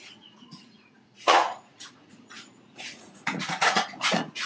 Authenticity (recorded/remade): remade